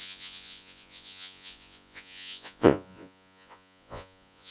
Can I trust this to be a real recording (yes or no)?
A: no